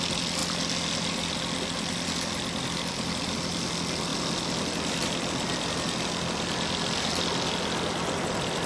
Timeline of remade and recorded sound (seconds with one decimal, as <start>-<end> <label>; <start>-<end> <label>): 0.0-8.7 recorded